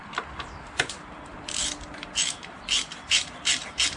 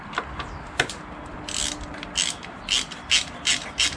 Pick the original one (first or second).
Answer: second